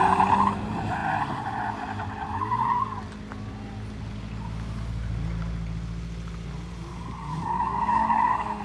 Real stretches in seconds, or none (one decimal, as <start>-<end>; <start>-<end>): 0.0-6.9